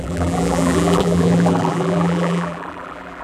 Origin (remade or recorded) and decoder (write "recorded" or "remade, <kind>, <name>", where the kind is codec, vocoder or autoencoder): remade, vocoder, BigVGAN v2